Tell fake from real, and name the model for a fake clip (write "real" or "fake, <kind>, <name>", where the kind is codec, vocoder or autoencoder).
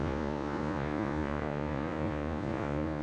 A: fake, vocoder, Vocos